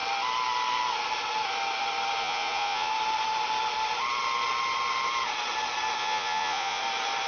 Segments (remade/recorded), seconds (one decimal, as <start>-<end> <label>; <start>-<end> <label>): 0.0-2.2 recorded; 2.2-2.9 remade; 2.9-6.0 recorded; 6.0-6.8 remade; 6.8-7.3 recorded